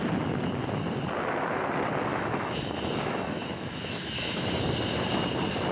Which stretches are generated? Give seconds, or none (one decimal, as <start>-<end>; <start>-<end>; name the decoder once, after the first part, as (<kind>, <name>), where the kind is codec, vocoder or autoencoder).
2.1-4.6 (autoencoder, DAC-VAE)